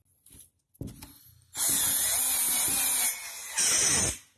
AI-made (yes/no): no